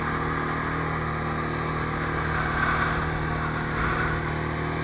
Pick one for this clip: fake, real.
real